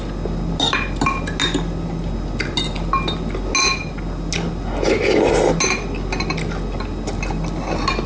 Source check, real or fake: real